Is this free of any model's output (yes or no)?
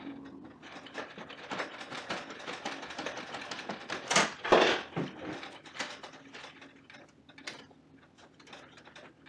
yes